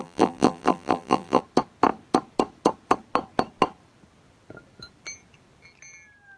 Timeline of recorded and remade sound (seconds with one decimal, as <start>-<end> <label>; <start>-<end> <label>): 0.0-1.4 remade; 1.4-6.4 recorded